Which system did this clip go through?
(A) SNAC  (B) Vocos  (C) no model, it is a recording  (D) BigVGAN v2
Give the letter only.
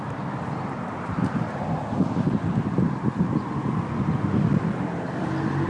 C